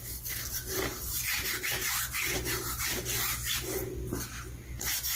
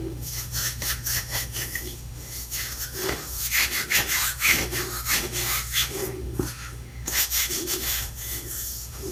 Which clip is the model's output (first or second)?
second